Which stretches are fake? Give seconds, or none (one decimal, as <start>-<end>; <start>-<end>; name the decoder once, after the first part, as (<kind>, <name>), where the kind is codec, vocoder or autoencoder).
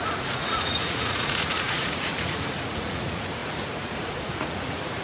0.0-5.0 (vocoder, Vocos)